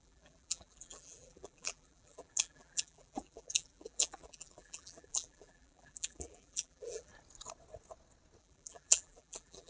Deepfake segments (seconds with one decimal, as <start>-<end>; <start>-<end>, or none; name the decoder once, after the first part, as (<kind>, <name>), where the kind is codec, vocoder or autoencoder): 0.0-7.1 (vocoder, BigVGAN v2); 8.4-9.7